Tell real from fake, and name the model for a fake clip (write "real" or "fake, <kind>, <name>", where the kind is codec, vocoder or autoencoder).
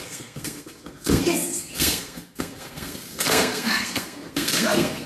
fake, codec, SNAC